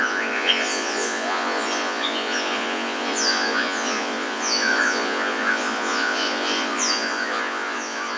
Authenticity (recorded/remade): remade